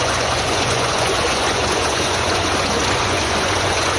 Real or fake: fake